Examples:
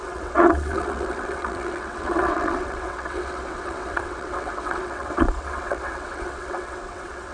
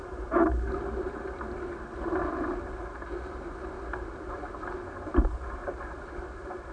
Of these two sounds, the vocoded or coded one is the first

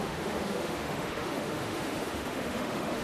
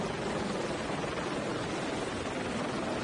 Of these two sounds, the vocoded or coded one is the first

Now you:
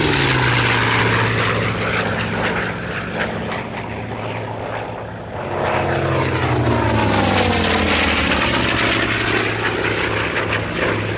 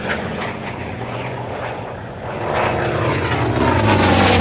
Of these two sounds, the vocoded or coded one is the second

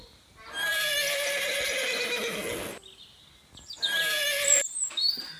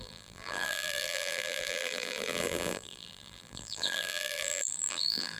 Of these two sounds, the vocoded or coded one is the second